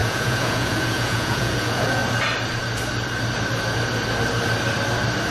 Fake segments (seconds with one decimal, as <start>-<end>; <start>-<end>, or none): 0.0-2.0